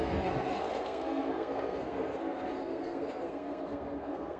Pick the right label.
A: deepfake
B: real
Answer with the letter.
A